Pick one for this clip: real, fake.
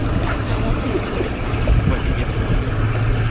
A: real